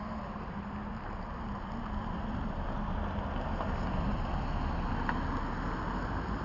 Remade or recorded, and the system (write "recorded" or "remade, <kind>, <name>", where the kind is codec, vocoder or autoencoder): recorded